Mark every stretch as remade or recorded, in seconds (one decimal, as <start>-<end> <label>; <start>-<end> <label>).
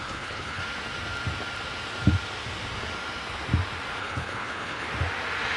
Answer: 0.0-0.6 remade; 0.6-4.0 recorded; 4.0-4.9 remade; 4.9-5.6 recorded